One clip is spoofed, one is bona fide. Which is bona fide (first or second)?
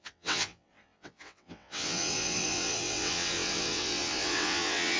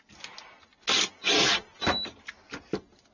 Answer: second